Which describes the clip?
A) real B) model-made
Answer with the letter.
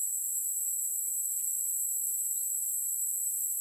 A